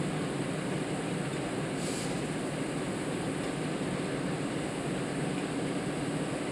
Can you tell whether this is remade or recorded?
recorded